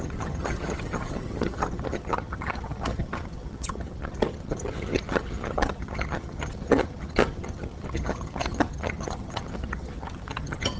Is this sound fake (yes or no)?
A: yes